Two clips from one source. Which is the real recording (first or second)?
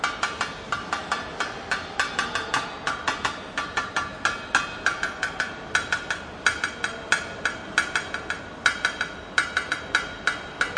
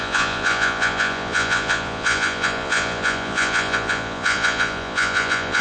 first